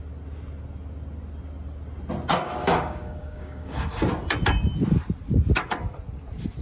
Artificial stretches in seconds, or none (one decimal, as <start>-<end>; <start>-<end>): 2.6-4.0